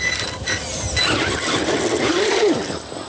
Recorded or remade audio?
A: recorded